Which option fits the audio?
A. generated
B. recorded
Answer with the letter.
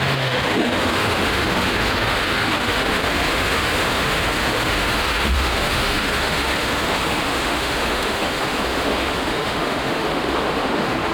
A